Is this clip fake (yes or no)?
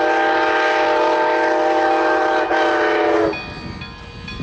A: no